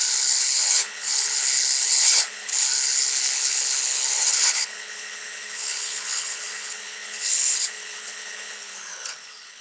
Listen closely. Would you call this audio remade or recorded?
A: remade